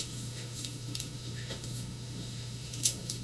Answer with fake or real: fake